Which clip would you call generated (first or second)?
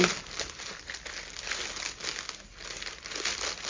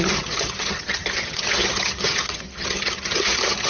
second